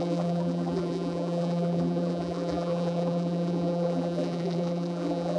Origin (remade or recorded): remade